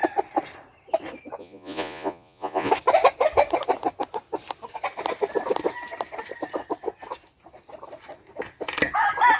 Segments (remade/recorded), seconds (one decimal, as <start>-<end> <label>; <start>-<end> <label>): 0.0-1.4 recorded; 1.4-2.7 remade; 2.7-9.4 recorded